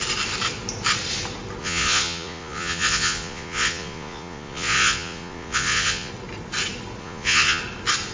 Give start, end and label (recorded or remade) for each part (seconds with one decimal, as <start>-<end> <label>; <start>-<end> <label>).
0.0-1.6 recorded; 1.6-6.1 remade; 6.1-7.0 recorded; 7.0-7.6 remade; 7.6-8.1 recorded